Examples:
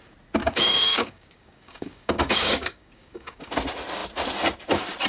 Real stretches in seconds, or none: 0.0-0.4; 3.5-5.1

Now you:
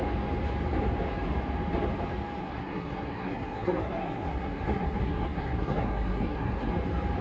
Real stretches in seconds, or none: 0.0-2.4; 6.7-7.2

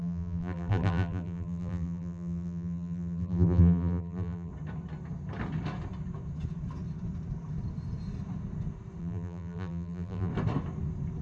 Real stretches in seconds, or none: 4.5-9.0; 10.3-11.2

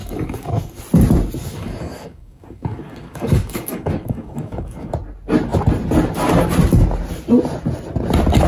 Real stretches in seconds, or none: 0.8-1.4; 4.9-8.5